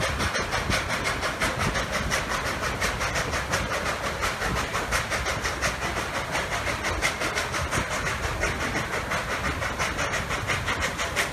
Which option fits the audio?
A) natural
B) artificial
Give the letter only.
A